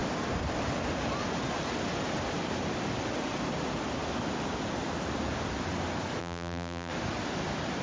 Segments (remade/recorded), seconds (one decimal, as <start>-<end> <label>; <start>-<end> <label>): 0.0-6.2 recorded; 6.2-6.9 remade; 6.9-7.8 recorded